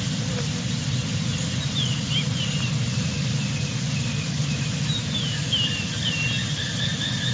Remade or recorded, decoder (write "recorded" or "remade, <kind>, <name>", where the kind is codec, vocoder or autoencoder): recorded